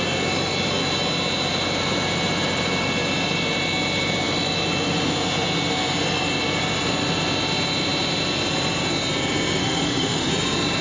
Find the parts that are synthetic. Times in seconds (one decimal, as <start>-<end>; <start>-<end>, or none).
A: 9.6-10.3